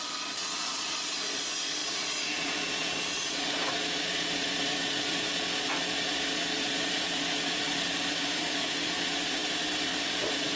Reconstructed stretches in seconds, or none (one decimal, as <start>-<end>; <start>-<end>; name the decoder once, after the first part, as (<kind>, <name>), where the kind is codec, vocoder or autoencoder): 0.0-9.4 (vocoder, Vocos); 10.0-10.6